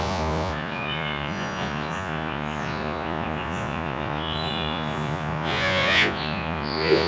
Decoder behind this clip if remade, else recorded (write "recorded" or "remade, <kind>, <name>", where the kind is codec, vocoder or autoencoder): remade, vocoder, Vocos